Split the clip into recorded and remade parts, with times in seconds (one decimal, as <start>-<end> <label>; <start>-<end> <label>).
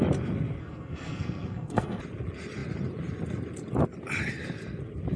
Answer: 0.0-0.6 recorded; 0.6-2.0 remade; 2.0-5.2 recorded